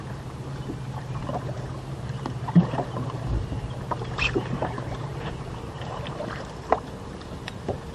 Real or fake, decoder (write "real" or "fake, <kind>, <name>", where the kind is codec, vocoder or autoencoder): fake, vocoder, BigVGAN v2